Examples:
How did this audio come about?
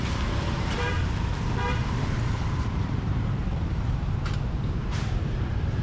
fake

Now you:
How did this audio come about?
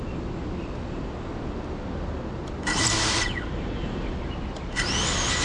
real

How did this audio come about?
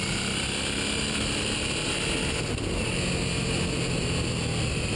real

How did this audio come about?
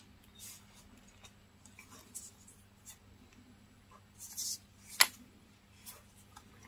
real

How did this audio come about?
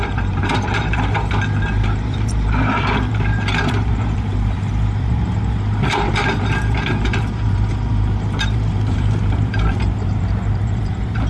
fake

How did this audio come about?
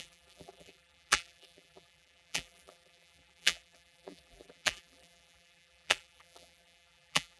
fake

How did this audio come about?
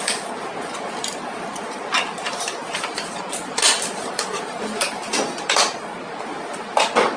real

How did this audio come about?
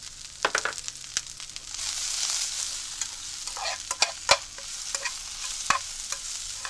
real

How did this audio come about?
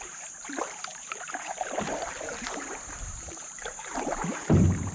fake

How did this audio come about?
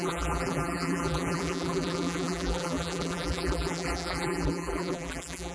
fake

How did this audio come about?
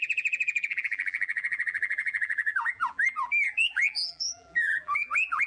fake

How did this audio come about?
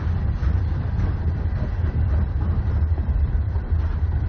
fake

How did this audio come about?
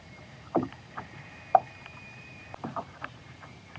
fake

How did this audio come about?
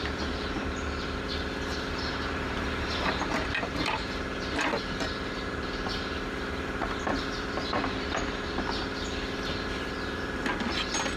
fake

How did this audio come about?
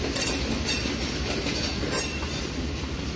real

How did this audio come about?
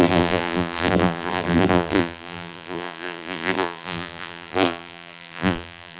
fake